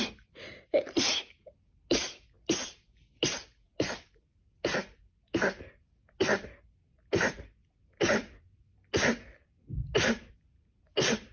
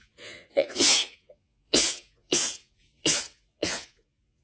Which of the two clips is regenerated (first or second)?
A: second